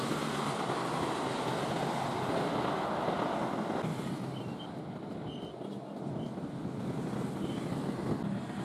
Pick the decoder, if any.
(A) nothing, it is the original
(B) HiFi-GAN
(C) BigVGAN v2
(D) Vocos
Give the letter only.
A